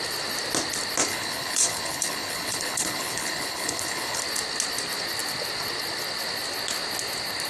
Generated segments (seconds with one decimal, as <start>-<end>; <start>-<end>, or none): 1.1-4.2

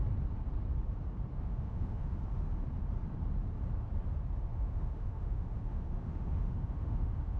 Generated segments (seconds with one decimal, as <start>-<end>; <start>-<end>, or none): 1.3-2.2; 4.5-7.4

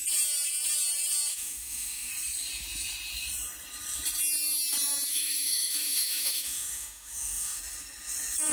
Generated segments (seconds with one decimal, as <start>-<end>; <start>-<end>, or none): 1.3-2.1; 5.1-7.6